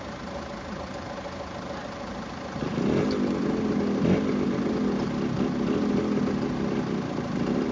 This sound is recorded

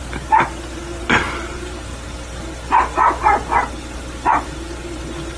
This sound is recorded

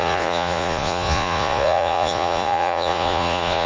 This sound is remade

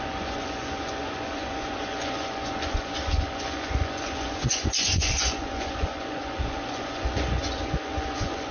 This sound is remade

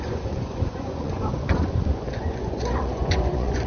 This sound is remade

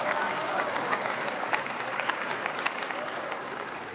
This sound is remade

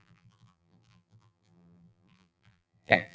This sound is remade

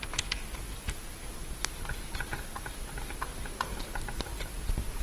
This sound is recorded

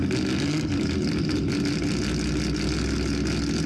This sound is recorded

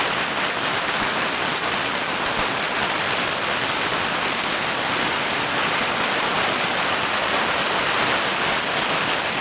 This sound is recorded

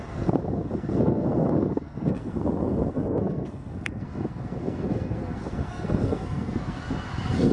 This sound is remade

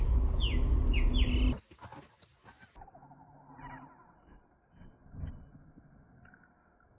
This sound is recorded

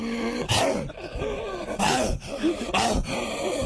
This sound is recorded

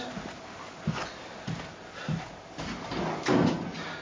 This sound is recorded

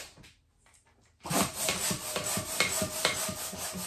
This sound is recorded